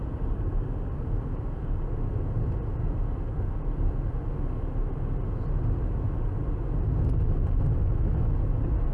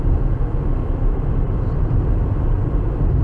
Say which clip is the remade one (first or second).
second